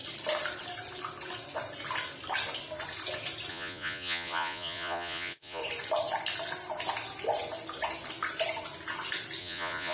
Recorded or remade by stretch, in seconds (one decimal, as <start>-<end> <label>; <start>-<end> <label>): 0.0-3.5 recorded; 3.5-5.6 remade; 5.6-9.4 recorded; 9.4-9.9 remade